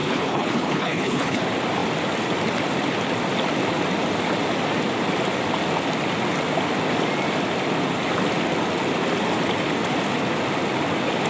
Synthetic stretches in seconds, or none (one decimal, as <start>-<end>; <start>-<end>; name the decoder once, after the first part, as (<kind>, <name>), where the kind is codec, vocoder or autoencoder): 0.0-1.4 (codec, HILCodec)